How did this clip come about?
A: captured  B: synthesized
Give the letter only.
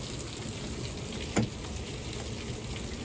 A